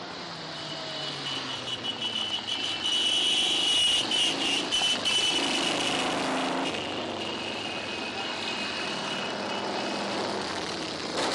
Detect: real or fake real